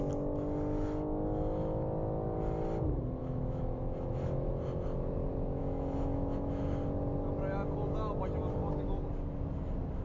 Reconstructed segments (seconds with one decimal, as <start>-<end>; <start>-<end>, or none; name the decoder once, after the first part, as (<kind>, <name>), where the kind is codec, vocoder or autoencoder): 3.2-4.5 (autoencoder, DAC-VAE); 5.6-6.6